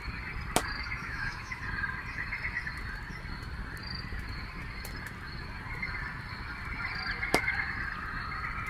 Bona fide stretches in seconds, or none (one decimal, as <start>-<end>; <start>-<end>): 0.0-1.0; 1.6-8.7